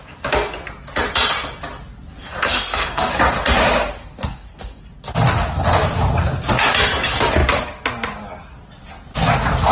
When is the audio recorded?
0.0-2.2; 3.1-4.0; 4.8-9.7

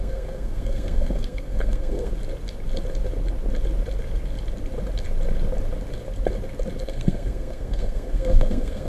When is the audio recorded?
2.1-6.8

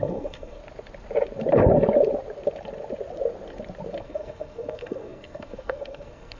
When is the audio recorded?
0.6-4.0

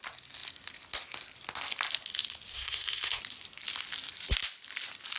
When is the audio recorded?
0.0-2.5; 3.2-5.2

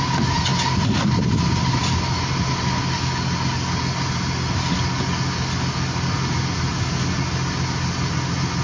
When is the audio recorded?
0.0-8.6